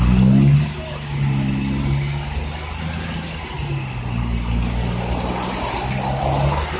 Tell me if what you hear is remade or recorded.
recorded